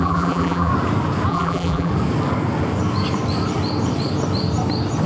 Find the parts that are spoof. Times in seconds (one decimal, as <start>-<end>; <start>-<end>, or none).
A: 0.0-0.7; 1.3-1.9